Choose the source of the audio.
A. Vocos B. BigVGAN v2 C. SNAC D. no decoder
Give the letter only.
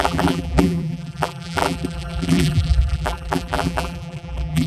B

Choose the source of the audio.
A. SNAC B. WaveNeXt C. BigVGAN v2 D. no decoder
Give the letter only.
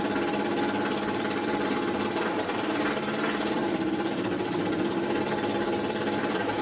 C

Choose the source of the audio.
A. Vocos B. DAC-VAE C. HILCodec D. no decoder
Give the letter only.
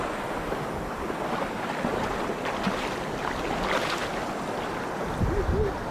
D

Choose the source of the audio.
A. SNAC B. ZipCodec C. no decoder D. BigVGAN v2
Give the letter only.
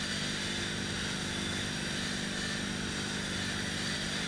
C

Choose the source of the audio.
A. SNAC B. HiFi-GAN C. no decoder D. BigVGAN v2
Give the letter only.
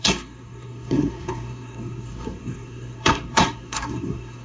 A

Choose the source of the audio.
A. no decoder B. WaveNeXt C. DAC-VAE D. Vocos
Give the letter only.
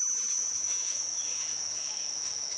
C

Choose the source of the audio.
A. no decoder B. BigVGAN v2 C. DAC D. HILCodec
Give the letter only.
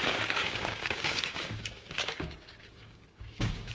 C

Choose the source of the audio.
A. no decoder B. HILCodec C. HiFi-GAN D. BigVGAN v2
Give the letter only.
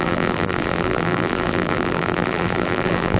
D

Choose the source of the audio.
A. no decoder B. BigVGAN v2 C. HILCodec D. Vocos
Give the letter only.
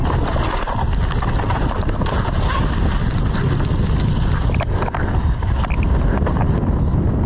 A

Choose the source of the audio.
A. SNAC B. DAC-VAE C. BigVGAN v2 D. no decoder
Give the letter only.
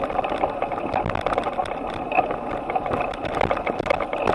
D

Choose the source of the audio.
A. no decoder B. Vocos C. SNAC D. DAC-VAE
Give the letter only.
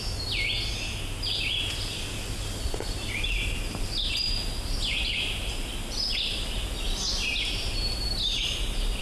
A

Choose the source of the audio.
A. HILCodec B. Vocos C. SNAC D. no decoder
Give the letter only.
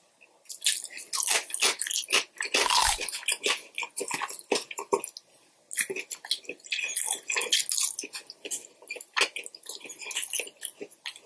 D